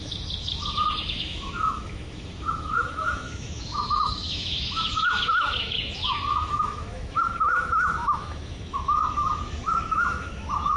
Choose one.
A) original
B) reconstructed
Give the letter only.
B